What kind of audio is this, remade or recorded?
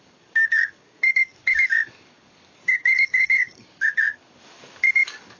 remade